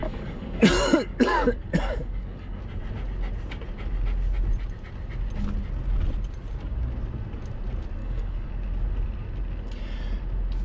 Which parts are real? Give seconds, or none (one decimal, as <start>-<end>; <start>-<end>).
2.6-8.0; 8.5-10.6